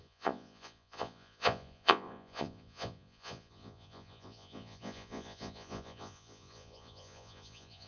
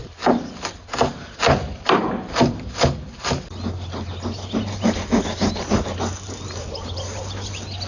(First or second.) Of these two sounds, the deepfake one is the first